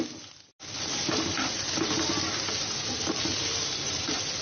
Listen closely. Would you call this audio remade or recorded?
recorded